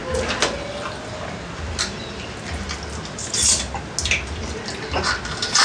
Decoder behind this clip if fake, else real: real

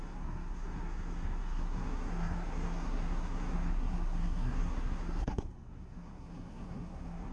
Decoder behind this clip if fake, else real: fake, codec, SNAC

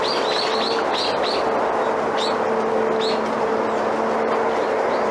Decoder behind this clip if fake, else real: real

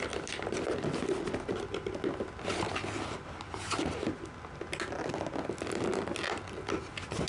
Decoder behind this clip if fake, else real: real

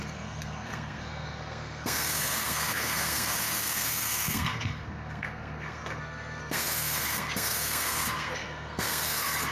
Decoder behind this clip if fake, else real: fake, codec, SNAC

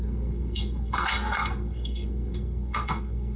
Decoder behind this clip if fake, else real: fake, codec, SNAC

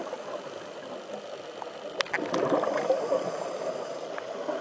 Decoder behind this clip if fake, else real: real